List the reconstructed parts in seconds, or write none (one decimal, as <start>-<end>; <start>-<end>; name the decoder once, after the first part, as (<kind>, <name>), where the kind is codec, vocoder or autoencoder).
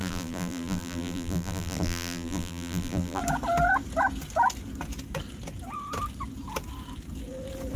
0.0-3.2 (vocoder, BigVGAN v2)